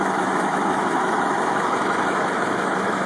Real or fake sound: fake